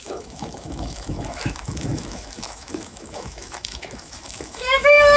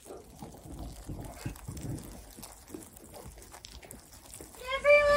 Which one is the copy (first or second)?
first